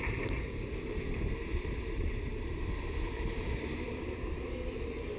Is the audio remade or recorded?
remade